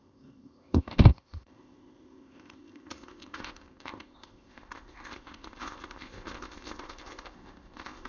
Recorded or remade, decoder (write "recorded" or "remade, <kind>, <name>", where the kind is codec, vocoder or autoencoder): remade, codec, ZipCodec